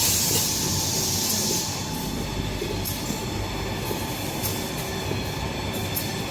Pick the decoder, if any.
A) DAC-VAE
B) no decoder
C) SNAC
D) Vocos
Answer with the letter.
B